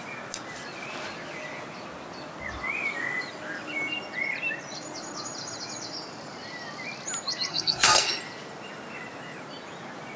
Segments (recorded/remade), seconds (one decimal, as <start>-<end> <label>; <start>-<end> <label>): 0.0-7.5 recorded; 7.5-8.2 remade; 8.2-10.2 recorded